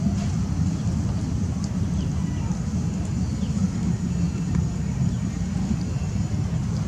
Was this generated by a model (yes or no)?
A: no